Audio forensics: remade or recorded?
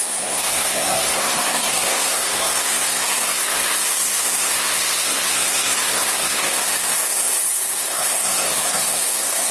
remade